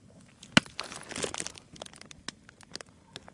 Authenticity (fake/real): real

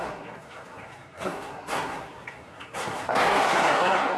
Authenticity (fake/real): fake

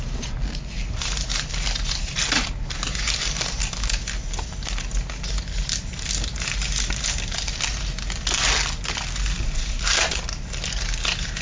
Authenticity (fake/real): real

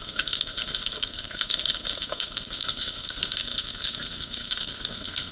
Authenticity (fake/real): fake